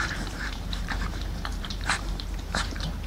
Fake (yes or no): yes